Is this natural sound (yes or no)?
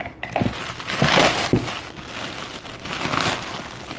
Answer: yes